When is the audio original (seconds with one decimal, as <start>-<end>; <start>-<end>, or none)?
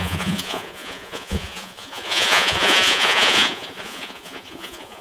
none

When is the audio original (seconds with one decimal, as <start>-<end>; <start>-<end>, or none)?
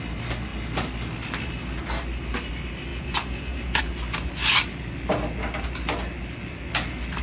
0.0-2.9; 3.8-7.2